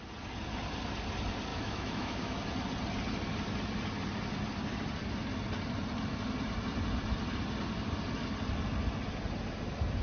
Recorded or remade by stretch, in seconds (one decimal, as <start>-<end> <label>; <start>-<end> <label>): 0.0-1.5 recorded; 1.5-2.4 remade; 2.4-10.0 recorded